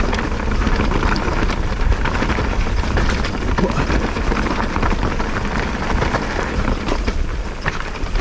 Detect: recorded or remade recorded